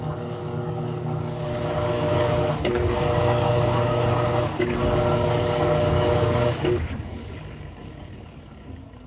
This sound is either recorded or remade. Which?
remade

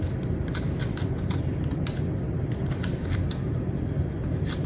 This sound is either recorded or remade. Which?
remade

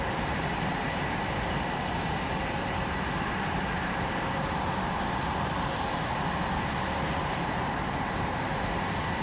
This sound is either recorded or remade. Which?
remade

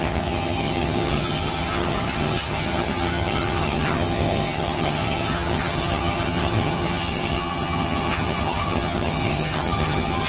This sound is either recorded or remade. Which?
remade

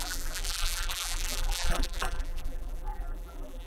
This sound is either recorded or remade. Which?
remade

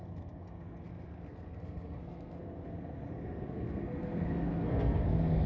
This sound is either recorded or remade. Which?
remade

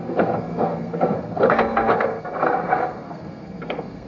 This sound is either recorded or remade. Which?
remade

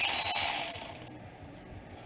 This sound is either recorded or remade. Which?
recorded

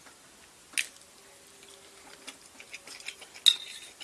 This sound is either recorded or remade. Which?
recorded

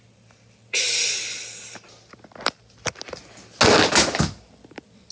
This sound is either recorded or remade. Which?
recorded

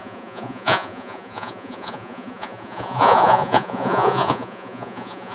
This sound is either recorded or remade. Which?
remade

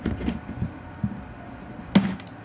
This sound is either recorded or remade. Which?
recorded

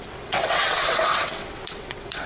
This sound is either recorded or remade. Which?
remade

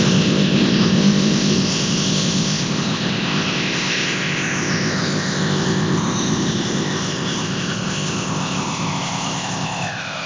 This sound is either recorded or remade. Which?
remade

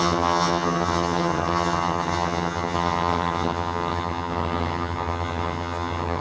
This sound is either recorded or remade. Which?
remade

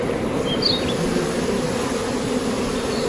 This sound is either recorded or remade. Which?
recorded